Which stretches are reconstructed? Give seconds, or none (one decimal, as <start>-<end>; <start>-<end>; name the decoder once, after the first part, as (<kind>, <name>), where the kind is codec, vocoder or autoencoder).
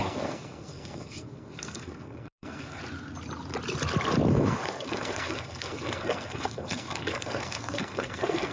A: 0.0-2.8 (codec, SNAC); 4.3-8.5